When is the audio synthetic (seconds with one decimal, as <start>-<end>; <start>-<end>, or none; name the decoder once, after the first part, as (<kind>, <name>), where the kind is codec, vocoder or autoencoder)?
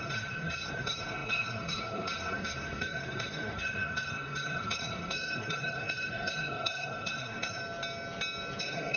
0.0-7.6 (codec, SNAC); 8.6-9.0